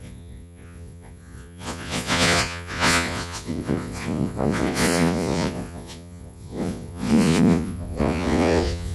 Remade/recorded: remade